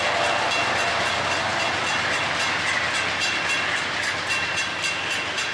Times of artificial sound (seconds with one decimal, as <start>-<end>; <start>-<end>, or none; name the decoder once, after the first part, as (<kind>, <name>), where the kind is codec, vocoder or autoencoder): none